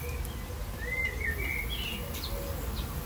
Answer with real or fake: real